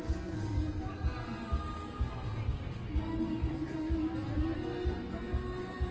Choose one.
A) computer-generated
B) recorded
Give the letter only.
B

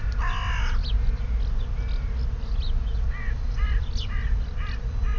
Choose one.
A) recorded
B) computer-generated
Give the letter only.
A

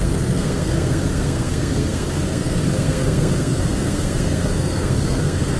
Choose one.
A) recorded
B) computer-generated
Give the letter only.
B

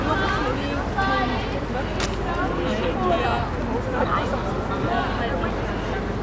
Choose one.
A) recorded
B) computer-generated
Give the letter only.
A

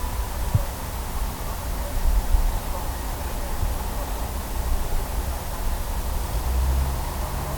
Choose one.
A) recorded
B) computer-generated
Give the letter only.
A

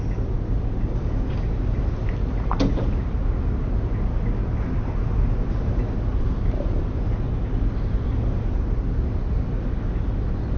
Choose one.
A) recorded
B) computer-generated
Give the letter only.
A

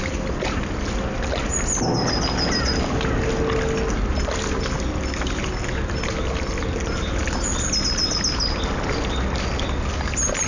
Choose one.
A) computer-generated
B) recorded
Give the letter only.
B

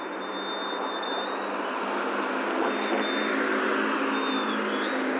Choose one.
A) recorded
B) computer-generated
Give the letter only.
A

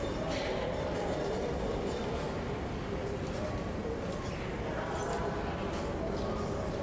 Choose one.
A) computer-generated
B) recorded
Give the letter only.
B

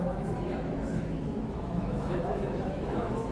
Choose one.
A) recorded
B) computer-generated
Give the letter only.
B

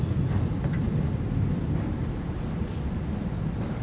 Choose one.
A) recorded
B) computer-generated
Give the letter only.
A